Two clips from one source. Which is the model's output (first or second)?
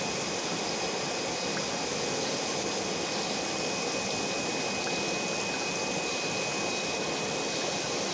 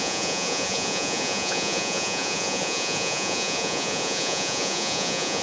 second